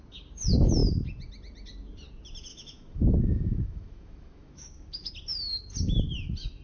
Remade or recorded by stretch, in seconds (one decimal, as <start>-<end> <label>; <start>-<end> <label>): 0.0-2.5 recorded; 2.5-5.1 remade; 5.1-6.6 recorded